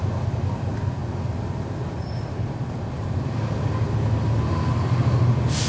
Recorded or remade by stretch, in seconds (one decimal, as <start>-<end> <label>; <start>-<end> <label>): 0.0-5.7 recorded